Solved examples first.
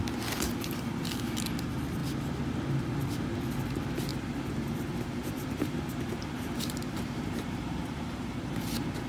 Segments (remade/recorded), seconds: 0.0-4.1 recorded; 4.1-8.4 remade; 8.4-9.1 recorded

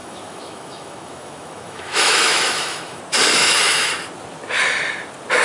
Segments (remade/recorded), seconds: 0.0-3.0 remade; 3.0-3.4 recorded; 3.4-3.9 remade; 3.9-5.4 recorded

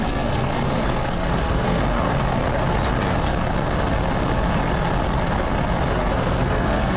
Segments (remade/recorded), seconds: 0.0-1.8 remade; 1.8-6.0 recorded; 6.0-7.0 remade

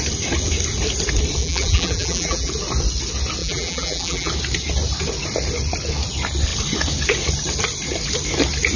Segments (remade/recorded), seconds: 0.0-1.4 recorded; 1.4-2.5 remade; 2.5-3.4 recorded; 3.4-4.3 remade; 4.3-8.8 recorded

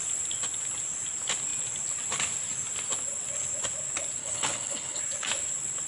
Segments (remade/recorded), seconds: 0.0-4.2 recorded; 4.2-5.0 remade; 5.0-5.9 recorded

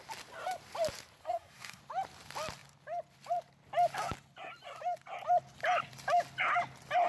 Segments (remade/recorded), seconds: 0.0-1.2 recorded; 1.2-1.8 remade; 1.8-7.1 recorded

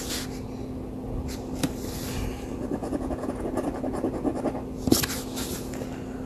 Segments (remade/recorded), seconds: 0.0-2.8 recorded; 2.8-3.3 remade; 3.3-6.3 recorded